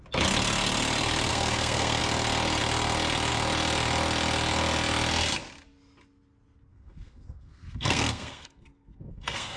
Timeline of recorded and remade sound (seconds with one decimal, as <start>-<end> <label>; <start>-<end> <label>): 0.0-1.3 recorded; 1.3-2.0 remade; 2.0-6.7 recorded; 6.7-9.6 remade

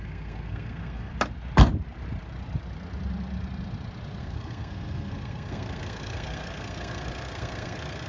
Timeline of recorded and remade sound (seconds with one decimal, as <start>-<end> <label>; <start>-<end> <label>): 0.0-1.1 remade; 1.1-4.2 recorded; 4.2-8.1 remade

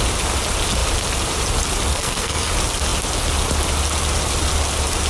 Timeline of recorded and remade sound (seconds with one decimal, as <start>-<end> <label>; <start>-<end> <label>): 0.0-1.9 recorded; 1.9-2.5 remade; 2.5-5.1 recorded

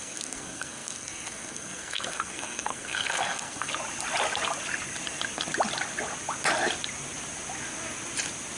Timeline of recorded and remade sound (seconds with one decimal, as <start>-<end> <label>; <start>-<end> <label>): 0.0-3.7 remade; 3.7-8.6 recorded